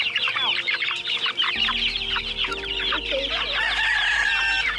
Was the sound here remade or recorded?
remade